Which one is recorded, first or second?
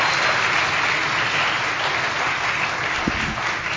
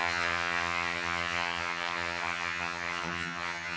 first